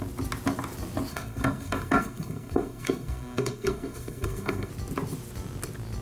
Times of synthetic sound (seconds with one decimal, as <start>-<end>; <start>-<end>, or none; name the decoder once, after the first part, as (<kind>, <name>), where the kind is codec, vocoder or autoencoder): 1.1-4.7 (codec, SNAC)